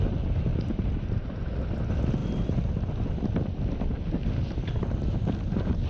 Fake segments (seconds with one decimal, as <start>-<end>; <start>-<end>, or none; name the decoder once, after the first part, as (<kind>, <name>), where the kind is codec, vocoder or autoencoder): 0.5-1.5 (vocoder, BigVGAN v2)

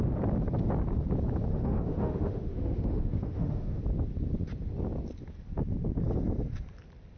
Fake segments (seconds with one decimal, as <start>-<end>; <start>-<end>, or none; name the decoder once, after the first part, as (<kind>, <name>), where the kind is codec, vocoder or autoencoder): 1.5-3.8 (autoencoder, DAC-VAE)

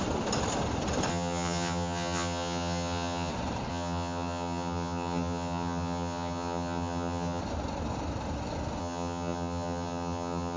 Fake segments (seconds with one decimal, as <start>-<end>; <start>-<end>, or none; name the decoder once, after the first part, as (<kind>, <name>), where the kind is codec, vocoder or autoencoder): 1.1-3.3 (vocoder, HiFi-GAN); 3.7-7.4; 8.8-10.6

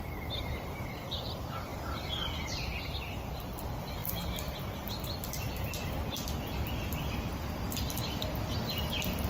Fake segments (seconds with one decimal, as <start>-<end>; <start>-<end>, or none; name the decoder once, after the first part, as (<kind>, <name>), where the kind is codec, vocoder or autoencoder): 0.0-9.3 (vocoder, BigVGAN v2)

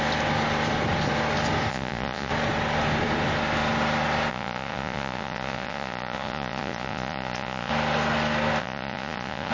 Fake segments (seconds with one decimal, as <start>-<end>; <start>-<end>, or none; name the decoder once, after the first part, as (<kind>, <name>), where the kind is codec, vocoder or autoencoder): 1.7-2.3 (vocoder, Vocos); 4.3-7.7; 8.6-9.5

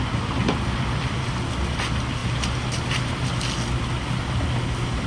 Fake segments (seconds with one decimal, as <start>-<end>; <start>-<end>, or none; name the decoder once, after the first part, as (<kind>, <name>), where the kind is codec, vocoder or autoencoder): 0.4-1.7 (vocoder, BigVGAN v2)